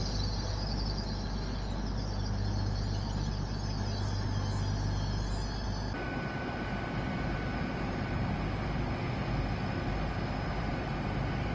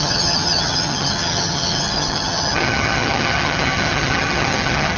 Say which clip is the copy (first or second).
second